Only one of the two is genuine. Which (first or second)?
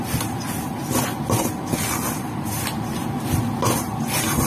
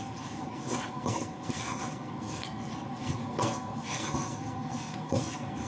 first